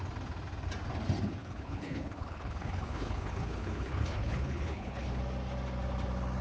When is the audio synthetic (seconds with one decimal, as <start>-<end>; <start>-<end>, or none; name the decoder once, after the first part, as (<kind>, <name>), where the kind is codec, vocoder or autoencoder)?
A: 1.4-5.2 (codec, HILCodec)